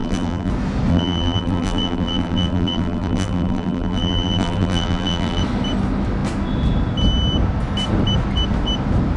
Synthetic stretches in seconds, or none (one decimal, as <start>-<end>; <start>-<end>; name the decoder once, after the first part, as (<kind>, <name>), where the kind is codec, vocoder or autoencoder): 0.0-0.5 (vocoder, BigVGAN v2); 0.9-5.4

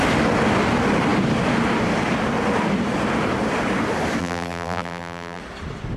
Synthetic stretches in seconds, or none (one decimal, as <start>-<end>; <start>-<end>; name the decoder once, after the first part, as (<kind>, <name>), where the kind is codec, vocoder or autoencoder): 4.2-5.4 (vocoder, BigVGAN v2)

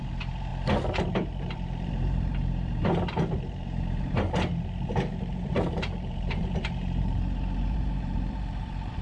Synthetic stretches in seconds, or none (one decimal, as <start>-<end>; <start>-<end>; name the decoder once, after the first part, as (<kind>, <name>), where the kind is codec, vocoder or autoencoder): 0.0-0.5 (vocoder, BigVGAN v2); 1.0-9.0

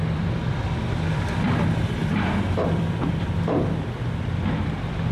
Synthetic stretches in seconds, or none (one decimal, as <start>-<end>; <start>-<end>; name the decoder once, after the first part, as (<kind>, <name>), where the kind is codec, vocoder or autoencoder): 0.0-5.1 (vocoder, BigVGAN v2)

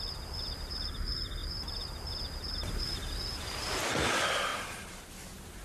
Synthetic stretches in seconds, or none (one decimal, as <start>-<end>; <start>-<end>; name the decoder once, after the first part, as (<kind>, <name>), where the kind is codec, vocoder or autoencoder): 1.4-2.8 (vocoder, BigVGAN v2); 4.5-5.1

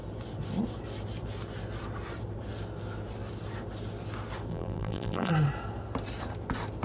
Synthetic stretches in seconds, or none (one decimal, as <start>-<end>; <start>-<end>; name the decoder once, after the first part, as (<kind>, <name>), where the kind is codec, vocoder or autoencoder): 4.5-5.3 (vocoder, BigVGAN v2)

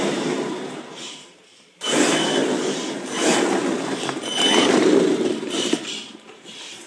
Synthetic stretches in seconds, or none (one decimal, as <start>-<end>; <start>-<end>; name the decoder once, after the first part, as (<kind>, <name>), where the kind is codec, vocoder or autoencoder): 0.0-6.9 (vocoder, BigVGAN v2)